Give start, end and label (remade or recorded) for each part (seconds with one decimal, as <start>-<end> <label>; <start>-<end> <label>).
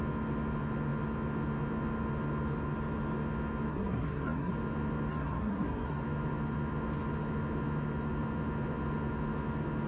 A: 0.0-3.7 recorded; 3.7-4.5 remade; 4.5-5.1 recorded; 5.1-6.0 remade; 6.0-9.9 recorded